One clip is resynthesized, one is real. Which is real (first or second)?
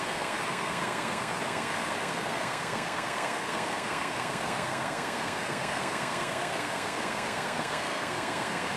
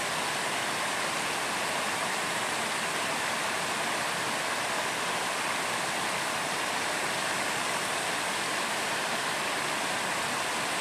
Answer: second